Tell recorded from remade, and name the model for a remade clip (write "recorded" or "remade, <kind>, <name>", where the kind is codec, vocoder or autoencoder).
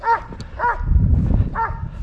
recorded